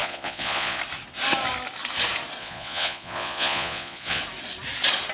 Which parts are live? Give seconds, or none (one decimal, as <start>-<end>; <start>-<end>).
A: 0.8-2.4; 4.2-5.1